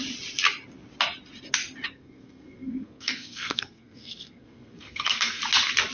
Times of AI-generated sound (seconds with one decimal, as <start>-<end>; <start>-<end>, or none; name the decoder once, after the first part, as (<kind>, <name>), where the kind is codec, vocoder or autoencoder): 1.9-5.4 (codec, SNAC)